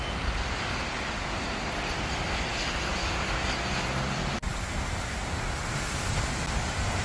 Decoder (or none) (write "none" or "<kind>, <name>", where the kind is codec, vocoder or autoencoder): none